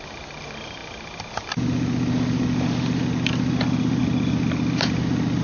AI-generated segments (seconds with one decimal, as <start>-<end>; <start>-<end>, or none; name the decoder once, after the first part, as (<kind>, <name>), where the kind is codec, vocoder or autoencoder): none